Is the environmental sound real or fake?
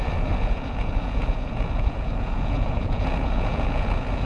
fake